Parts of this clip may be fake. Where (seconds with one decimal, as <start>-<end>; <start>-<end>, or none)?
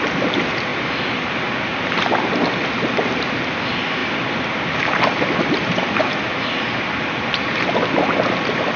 4.0-6.0